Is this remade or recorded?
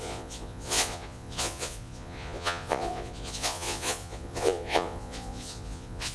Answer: remade